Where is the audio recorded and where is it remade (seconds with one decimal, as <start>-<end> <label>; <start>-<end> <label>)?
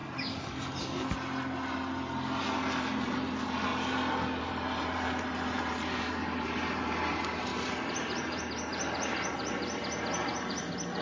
0.0-2.4 recorded; 2.4-3.7 remade; 3.7-4.4 recorded; 4.4-11.0 remade